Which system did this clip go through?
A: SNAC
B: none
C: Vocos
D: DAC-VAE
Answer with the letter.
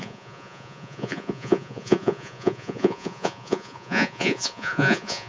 C